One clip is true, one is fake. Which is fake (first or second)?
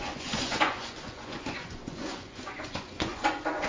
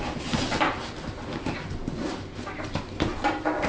first